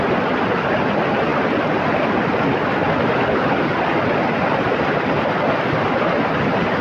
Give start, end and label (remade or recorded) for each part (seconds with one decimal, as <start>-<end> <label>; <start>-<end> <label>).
0.0-6.8 recorded